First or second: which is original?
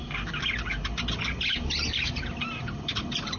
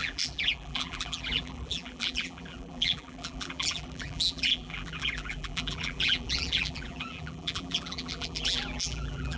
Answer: first